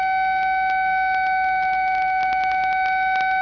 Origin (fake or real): real